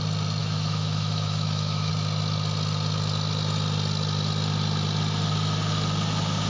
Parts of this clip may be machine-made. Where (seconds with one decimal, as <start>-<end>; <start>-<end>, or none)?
0.4-1.9